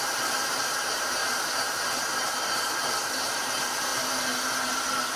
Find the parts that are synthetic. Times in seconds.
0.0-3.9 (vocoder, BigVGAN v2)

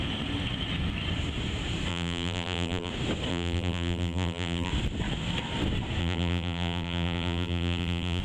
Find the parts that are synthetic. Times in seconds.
1.9-2.9 (vocoder, BigVGAN v2); 3.3-4.7; 6.0-8.2

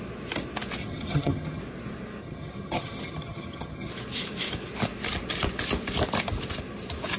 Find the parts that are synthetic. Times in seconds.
0.8-1.6 (vocoder, HiFi-GAN); 2.2-3.9

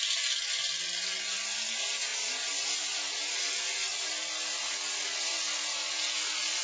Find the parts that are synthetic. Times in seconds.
none

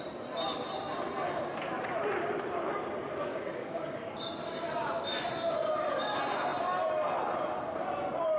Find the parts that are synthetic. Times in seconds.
3.3-4.6 (codec, DAC)

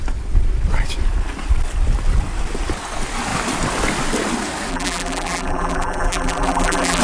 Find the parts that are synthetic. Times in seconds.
4.7-7.0 (vocoder, BigVGAN v2)